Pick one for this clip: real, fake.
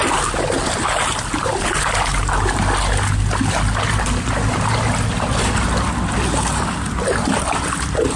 real